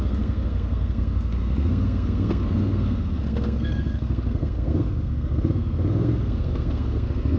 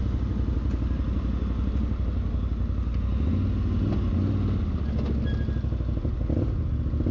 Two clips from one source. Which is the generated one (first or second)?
first